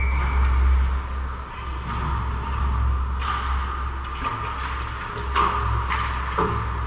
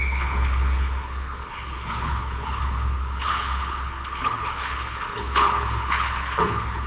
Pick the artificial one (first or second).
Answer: second